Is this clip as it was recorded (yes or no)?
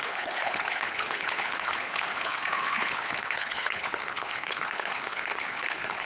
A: no